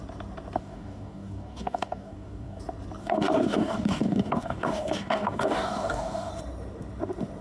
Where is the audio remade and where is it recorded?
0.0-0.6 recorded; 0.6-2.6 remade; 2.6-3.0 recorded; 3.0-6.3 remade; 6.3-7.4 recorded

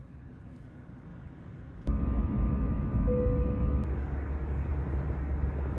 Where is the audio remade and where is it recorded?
0.0-4.7 remade; 4.7-5.2 recorded; 5.2-5.8 remade

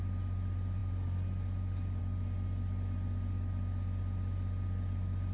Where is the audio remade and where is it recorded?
0.0-5.3 recorded

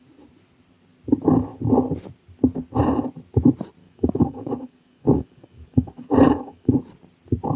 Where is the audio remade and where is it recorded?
0.0-3.8 recorded; 3.8-6.7 remade; 6.7-7.6 recorded